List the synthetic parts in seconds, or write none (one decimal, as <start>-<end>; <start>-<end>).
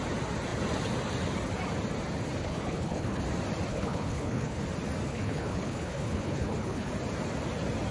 2.4-3.2; 3.7-4.6; 5.1-6.9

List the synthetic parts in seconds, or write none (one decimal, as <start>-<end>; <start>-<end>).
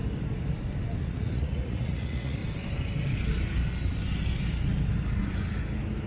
1.0-2.4